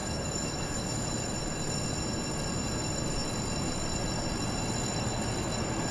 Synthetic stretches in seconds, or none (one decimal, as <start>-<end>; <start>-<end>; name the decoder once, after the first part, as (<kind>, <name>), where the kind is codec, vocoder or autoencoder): 0.0-1.1 (autoencoder, DAC-VAE)